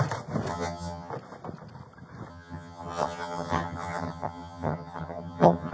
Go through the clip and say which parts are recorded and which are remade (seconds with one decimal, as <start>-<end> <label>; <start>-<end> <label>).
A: 0.0-0.5 recorded; 0.5-1.1 remade; 1.1-2.3 recorded; 2.3-5.7 remade

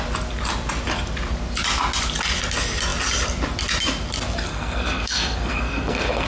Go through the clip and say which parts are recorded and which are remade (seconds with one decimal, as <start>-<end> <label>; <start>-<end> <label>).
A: 0.0-4.5 recorded; 4.5-6.3 remade

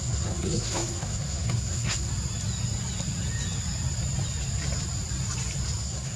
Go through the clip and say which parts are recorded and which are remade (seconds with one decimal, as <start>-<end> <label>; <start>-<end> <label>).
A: 0.0-2.1 remade; 2.1-5.8 recorded; 5.8-6.2 remade

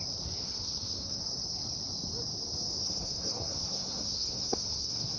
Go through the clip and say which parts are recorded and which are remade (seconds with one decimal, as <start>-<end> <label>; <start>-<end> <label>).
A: 0.0-0.4 recorded; 0.4-1.2 remade; 1.2-2.8 recorded; 2.8-5.2 remade

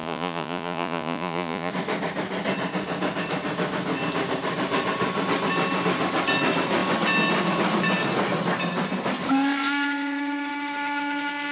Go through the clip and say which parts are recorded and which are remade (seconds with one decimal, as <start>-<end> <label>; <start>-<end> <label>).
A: 0.0-1.7 remade; 1.7-11.5 recorded

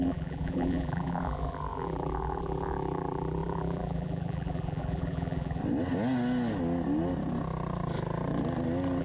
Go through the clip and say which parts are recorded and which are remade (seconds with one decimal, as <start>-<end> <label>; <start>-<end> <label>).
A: 0.0-5.6 remade; 5.6-9.0 recorded

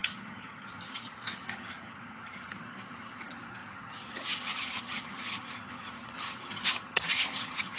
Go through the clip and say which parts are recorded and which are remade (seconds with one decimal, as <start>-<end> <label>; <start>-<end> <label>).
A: 0.0-7.8 remade